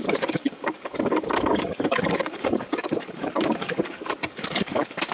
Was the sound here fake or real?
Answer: fake